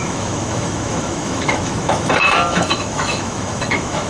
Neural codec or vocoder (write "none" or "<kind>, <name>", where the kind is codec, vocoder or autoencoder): autoencoder, DAC-VAE